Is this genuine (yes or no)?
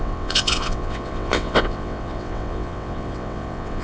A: no